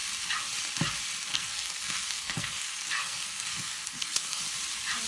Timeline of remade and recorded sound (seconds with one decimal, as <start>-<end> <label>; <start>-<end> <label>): 0.0-1.3 recorded; 1.3-4.4 remade; 4.4-5.1 recorded